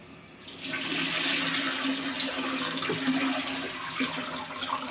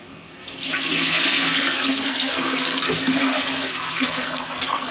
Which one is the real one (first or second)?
first